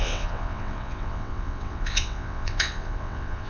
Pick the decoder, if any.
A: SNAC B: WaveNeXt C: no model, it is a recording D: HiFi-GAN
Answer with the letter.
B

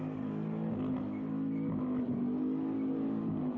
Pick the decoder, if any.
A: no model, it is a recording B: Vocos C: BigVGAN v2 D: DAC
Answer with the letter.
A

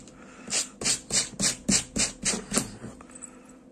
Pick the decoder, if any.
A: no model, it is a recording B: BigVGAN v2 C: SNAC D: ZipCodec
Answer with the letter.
A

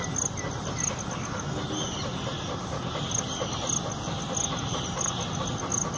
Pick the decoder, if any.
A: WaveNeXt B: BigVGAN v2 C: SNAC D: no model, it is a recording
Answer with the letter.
D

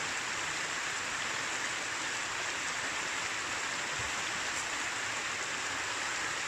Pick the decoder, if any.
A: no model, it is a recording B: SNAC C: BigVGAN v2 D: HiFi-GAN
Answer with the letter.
A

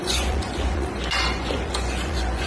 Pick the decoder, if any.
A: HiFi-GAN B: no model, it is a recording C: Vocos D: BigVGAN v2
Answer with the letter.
C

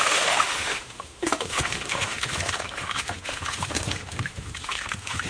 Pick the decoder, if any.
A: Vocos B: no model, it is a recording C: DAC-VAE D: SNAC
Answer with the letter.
C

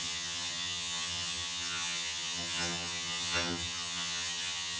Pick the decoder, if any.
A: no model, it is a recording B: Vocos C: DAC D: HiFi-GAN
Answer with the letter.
D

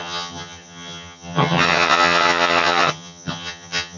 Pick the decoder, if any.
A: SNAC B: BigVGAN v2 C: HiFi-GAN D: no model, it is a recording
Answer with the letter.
C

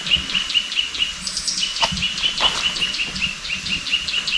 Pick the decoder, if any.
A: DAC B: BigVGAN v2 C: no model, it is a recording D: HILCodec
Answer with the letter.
C